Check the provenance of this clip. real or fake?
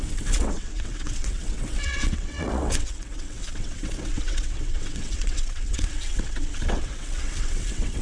fake